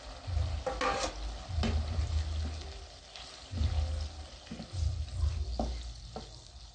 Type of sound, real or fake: real